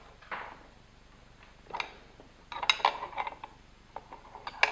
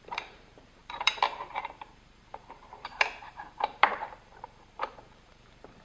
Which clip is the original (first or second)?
first